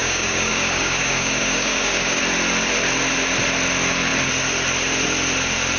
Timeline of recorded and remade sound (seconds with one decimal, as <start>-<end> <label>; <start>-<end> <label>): 0.0-2.2 remade; 2.2-5.8 recorded